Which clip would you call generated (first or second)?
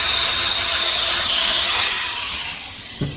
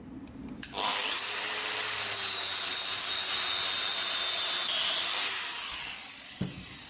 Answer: first